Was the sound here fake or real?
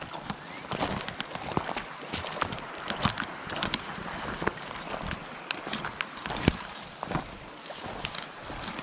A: real